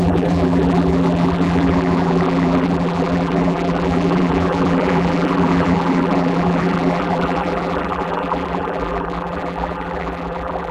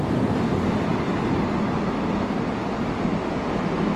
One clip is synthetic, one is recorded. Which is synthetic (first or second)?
first